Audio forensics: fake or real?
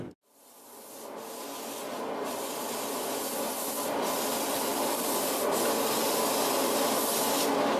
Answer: real